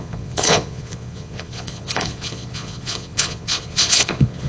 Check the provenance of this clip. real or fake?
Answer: fake